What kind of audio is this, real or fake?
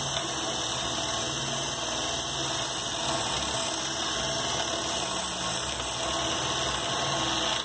real